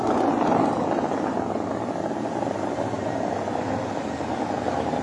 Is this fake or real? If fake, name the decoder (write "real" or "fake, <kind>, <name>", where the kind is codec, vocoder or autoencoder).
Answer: real